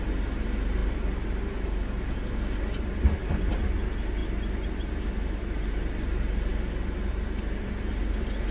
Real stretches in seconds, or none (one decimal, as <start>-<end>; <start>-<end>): 0.0-8.5